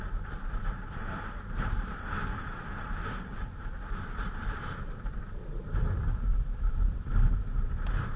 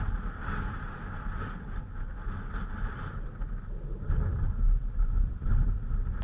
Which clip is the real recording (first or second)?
second